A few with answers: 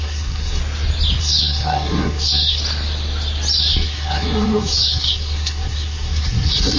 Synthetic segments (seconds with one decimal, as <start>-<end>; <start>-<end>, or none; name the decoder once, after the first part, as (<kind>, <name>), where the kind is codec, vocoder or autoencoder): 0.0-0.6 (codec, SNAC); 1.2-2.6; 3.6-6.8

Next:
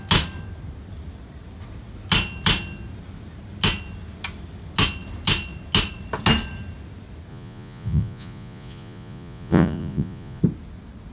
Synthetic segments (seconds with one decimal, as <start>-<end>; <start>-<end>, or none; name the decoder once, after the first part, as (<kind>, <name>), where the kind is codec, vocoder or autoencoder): 7.3-10.4 (vocoder, Vocos)

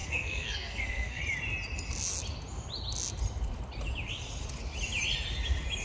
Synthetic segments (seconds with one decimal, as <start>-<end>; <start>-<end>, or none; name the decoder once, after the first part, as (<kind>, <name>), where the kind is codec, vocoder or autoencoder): 0.0-1.2 (codec, SNAC)

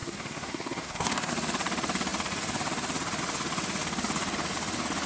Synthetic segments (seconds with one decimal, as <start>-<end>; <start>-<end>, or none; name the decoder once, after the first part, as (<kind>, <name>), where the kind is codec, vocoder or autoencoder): 0.0-1.3 (codec, SNAC)

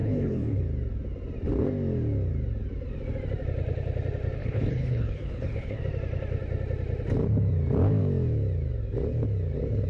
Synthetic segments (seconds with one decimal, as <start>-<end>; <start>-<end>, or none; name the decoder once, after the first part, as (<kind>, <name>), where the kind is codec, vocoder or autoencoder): 0.0-0.6 (codec, HILCodec); 4.4-5.8

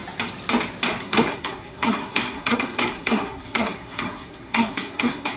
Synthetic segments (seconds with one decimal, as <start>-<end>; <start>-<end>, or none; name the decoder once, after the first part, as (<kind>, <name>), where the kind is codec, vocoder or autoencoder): 1.0-5.4 (codec, SNAC)